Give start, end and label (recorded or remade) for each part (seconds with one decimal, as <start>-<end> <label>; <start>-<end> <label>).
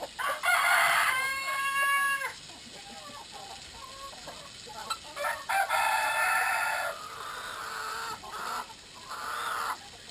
0.0-1.3 recorded; 1.3-2.4 remade; 2.4-10.1 recorded